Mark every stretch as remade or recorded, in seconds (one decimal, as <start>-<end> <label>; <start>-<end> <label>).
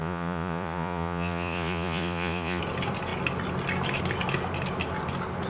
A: 0.0-2.6 remade; 2.6-5.5 recorded